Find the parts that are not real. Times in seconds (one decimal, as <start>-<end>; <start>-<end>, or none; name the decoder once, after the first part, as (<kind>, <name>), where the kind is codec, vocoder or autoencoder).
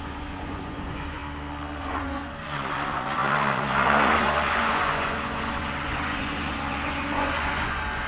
0.0-1.2 (vocoder, Vocos); 1.8-8.1